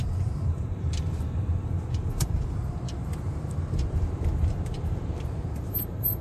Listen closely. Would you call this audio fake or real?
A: fake